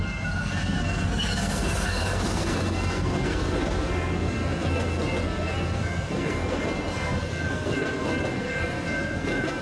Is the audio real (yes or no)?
no